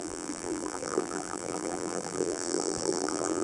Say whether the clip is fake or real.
fake